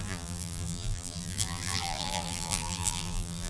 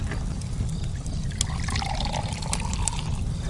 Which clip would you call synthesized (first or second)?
first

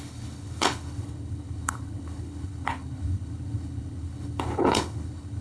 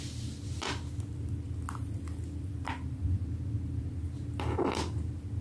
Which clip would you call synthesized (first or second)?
first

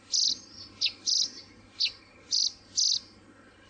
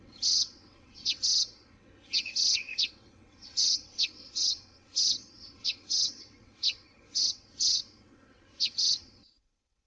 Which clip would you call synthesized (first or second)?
second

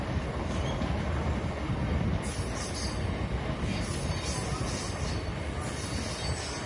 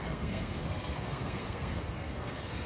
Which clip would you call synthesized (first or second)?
second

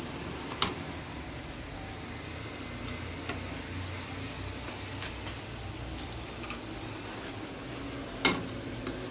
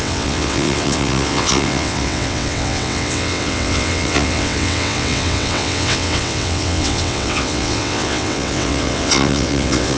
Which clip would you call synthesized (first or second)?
second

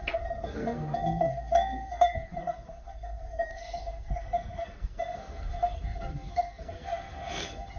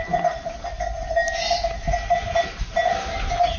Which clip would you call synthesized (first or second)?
first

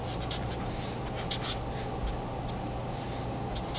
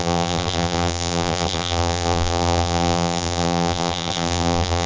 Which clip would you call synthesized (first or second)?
second